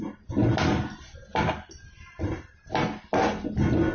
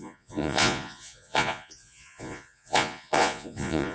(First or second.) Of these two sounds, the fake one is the second